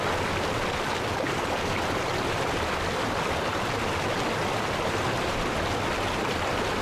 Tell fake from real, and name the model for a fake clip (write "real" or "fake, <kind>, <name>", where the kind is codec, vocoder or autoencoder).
real